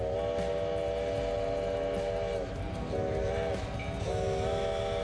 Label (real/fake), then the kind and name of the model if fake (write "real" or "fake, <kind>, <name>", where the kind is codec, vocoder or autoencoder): real